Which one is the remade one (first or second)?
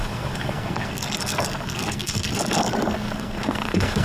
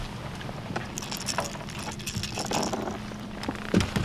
first